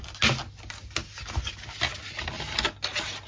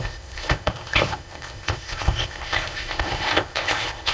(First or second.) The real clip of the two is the first